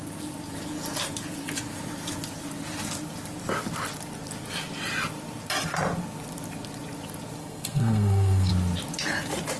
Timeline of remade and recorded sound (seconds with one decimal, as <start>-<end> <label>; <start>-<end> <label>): 0.0-7.4 recorded; 7.4-8.5 remade; 8.5-9.6 recorded